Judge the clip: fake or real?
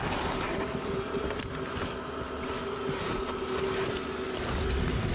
real